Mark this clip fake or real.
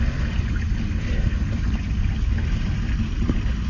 real